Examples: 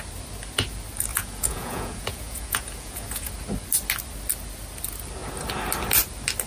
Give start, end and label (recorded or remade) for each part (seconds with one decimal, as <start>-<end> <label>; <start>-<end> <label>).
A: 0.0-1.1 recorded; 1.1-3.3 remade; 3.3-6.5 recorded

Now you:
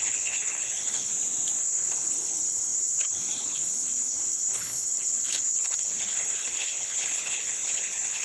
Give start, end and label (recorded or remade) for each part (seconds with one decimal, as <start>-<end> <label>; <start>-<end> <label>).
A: 0.0-1.1 remade; 1.1-1.6 recorded; 1.6-8.2 remade

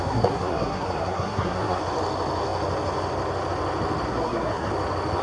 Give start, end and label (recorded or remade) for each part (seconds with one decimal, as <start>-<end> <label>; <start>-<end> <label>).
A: 0.0-1.8 remade; 1.8-4.1 recorded; 4.1-4.7 remade; 4.7-5.2 recorded

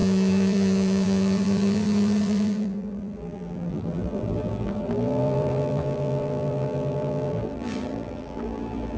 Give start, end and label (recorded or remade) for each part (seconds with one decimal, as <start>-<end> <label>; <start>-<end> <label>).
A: 0.0-9.0 remade

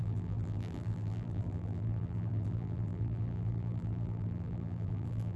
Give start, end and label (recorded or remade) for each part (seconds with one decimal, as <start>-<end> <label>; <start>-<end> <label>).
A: 0.0-5.4 remade